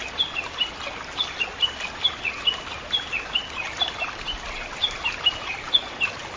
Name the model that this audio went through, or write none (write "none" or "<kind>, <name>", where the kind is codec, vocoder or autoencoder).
none